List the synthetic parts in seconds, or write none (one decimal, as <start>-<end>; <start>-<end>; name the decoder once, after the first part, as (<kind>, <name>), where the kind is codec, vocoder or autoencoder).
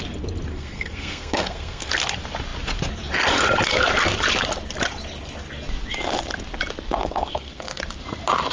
0.5-1.9 (codec, SNAC); 7.0-7.8